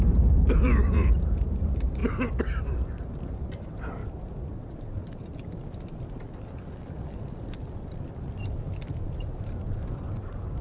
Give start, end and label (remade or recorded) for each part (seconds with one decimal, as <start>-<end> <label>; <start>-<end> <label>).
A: 0.0-2.0 remade; 2.0-2.6 recorded; 2.6-4.0 remade; 4.0-9.1 recorded; 9.1-10.6 remade

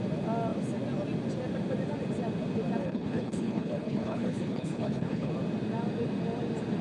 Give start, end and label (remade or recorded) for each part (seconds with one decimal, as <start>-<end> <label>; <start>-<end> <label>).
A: 0.0-2.8 recorded; 2.8-5.3 remade; 5.3-6.8 recorded

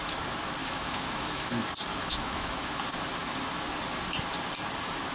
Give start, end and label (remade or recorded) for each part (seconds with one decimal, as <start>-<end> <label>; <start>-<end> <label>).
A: 0.0-0.6 recorded; 0.6-1.5 remade; 1.5-1.9 recorded; 1.9-2.8 remade; 2.8-5.1 recorded

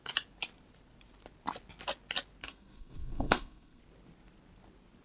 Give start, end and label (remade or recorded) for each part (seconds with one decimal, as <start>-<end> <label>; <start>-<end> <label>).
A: 0.0-2.4 recorded; 2.4-3.8 remade; 3.8-5.0 recorded

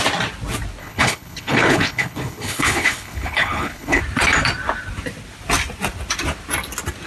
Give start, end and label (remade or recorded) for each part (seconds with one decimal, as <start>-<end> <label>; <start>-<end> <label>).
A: 0.0-0.8 recorded; 0.8-4.0 remade; 4.0-7.1 recorded